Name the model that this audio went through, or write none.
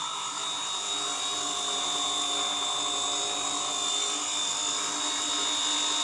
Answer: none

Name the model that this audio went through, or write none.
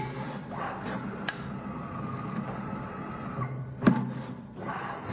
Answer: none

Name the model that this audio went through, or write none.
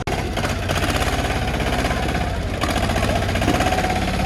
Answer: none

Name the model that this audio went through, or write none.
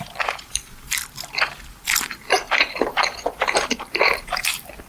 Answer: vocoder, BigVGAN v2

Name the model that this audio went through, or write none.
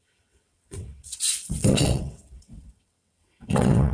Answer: vocoder, WaveNeXt